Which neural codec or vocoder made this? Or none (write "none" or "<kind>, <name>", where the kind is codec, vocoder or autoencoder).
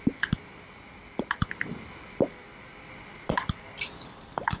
none